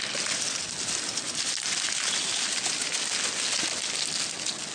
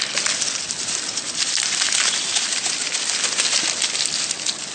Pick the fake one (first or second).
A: second